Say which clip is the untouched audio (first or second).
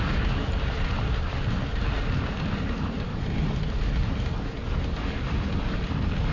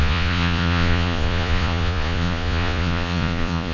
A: first